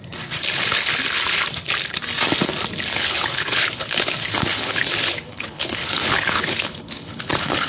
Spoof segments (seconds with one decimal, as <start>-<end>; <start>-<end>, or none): 2.9-7.7